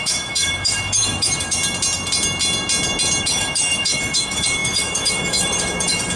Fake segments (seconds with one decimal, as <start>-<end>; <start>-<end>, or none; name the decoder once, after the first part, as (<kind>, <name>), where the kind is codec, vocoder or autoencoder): 0.0-1.6 (autoencoder, DAC-VAE); 3.2-6.2